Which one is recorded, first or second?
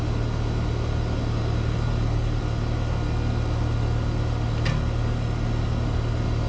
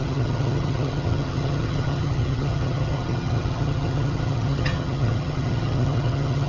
first